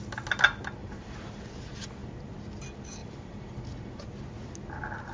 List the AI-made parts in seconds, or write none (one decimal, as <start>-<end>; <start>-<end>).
0.8-1.4; 3.0-4.0